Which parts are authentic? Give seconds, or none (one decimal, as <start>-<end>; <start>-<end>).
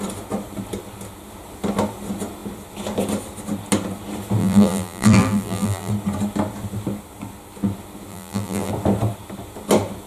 0.0-4.4; 5.9-8.1; 8.7-10.1